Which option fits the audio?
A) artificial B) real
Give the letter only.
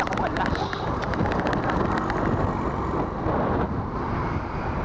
B